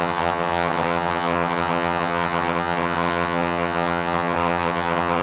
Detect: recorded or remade remade